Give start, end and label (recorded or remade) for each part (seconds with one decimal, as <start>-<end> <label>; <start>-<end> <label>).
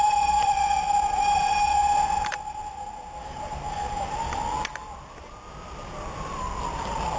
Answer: 0.0-7.2 recorded